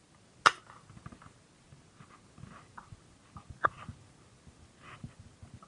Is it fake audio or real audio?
real